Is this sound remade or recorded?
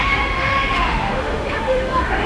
remade